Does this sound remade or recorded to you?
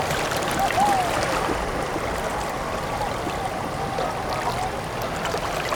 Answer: recorded